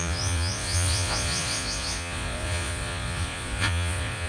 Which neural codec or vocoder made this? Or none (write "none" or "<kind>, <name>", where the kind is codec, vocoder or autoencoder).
vocoder, Vocos